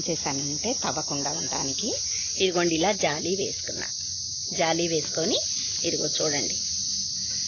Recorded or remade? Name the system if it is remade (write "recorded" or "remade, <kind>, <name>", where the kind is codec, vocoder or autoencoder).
recorded